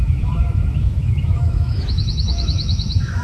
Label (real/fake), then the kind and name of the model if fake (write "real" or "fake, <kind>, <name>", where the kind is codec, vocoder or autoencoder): fake, autoencoder, DAC-VAE